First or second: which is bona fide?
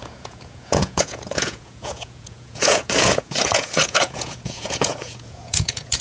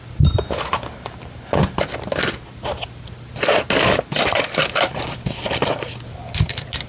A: second